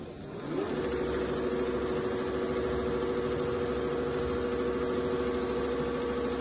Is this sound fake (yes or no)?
no